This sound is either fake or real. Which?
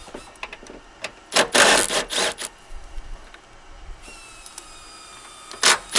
real